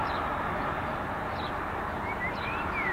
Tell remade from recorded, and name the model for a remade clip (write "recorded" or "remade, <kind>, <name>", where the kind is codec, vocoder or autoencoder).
remade, vocoder, BigVGAN v2